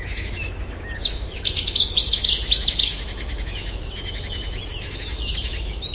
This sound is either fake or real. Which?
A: fake